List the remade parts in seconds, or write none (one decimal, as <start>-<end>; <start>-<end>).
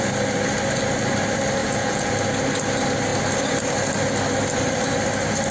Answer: 1.6-2.1